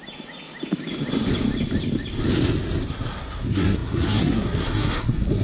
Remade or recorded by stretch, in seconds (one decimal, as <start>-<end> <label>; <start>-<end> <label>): 0.0-3.2 recorded; 3.2-5.4 remade